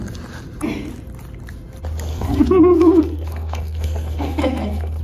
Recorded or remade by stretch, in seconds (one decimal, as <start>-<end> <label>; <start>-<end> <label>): 0.0-2.1 recorded; 2.1-5.0 remade